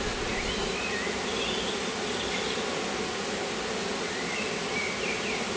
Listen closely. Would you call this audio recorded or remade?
recorded